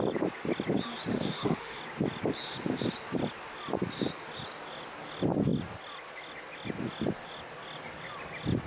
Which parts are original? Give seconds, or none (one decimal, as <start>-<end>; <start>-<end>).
0.0-1.1; 1.8-8.7